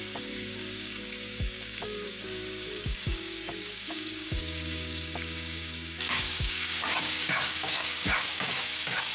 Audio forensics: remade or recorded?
remade